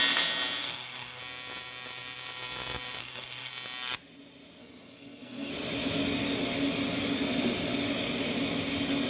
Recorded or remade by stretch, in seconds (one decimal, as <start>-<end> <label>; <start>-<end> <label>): 0.0-0.6 recorded; 0.6-1.2 remade; 1.2-3.0 recorded; 3.0-3.5 remade; 3.5-4.6 recorded; 4.6-5.5 remade; 5.5-9.1 recorded